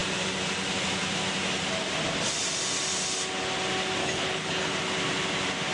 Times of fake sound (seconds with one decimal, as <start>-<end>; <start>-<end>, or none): 4.0-4.7